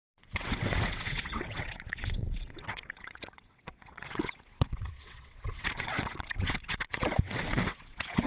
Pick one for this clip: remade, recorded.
remade